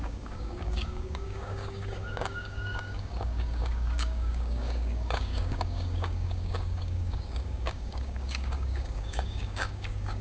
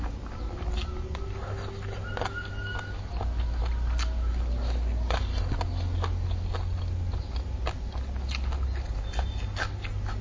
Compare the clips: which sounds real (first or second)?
second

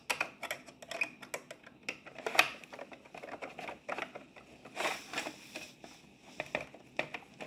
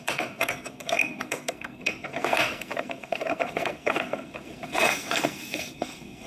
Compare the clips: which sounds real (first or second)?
first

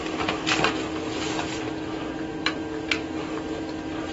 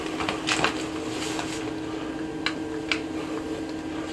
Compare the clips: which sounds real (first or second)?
second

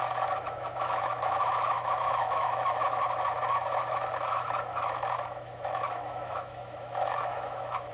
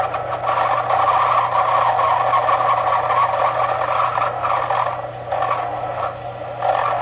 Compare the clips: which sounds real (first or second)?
second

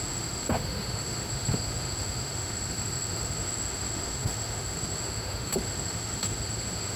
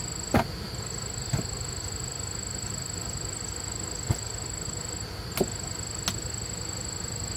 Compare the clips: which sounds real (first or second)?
second